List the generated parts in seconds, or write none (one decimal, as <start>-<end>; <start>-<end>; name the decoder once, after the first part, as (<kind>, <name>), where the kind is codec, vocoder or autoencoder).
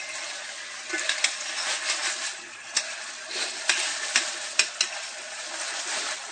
none